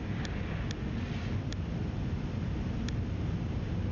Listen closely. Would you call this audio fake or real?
real